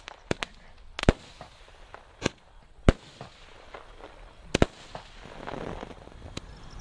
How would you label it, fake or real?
real